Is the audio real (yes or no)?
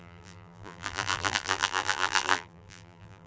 no